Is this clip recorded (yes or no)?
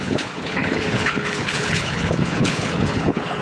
no